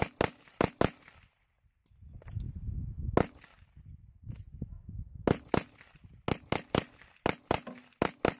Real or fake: real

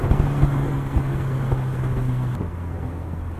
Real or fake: fake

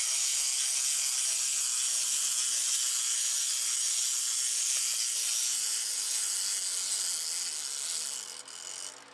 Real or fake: real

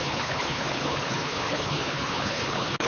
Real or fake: fake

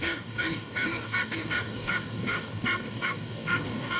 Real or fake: fake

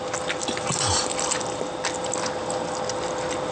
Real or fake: real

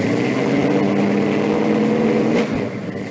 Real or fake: real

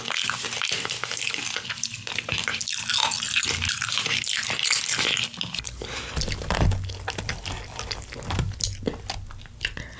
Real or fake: real